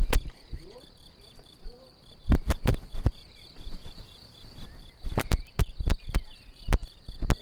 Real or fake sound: fake